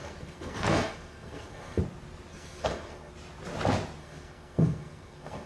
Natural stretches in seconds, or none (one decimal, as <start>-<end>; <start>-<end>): 1.8-2.3; 3.1-4.0

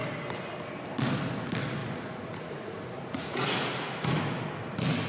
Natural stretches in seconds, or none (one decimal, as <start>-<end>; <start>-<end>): 0.0-1.8; 4.2-5.1

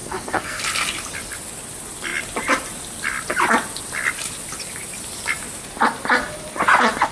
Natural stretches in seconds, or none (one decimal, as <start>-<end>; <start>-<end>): 0.6-7.1

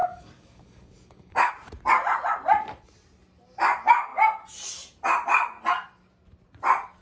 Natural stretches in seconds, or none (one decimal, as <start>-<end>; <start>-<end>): 1.5-7.0

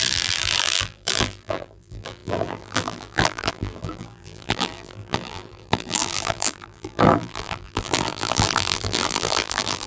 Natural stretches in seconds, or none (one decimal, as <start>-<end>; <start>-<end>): none